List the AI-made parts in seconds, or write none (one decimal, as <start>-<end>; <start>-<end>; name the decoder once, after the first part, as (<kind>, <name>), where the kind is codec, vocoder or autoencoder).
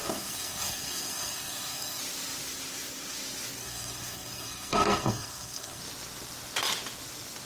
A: 0.0-2.0 (codec, SNAC); 3.6-5.8